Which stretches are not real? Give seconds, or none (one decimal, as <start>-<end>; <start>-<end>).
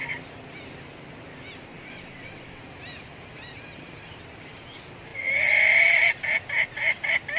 1.7-2.6